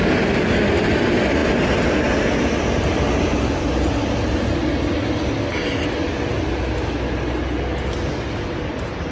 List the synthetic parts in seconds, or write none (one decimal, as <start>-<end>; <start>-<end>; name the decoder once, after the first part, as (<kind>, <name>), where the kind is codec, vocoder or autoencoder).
none